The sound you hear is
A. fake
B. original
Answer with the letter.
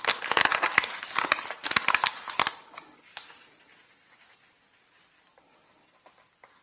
B